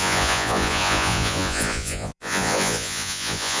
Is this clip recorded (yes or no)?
no